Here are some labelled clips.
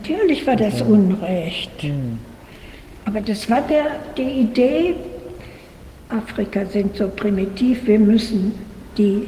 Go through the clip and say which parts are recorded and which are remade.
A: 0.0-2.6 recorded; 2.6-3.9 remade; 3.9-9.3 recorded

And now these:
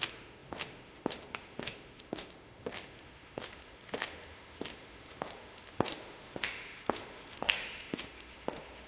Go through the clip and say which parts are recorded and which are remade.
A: 0.0-8.9 remade

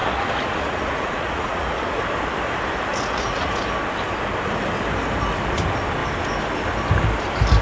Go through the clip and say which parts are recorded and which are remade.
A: 0.0-2.0 remade; 2.0-2.9 recorded; 2.9-3.5 remade; 3.5-7.6 recorded

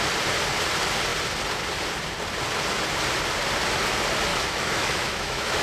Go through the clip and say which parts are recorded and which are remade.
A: 0.0-4.3 recorded; 4.3-5.6 remade